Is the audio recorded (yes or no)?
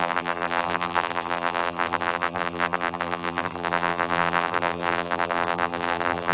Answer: no